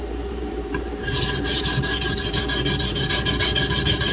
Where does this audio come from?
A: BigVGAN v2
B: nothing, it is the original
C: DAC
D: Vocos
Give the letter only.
A